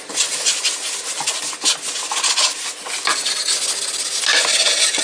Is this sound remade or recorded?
recorded